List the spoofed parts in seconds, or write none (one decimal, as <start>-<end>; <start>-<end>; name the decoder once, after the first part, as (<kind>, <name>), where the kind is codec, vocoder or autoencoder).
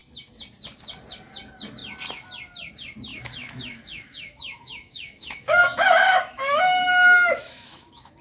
3.1-8.2 (autoencoder, DAC-VAE)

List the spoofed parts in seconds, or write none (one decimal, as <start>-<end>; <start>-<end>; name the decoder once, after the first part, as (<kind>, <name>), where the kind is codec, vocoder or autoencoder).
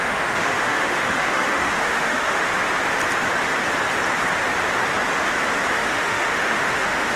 0.0-2.5 (autoencoder, DAC-VAE); 5.7-7.2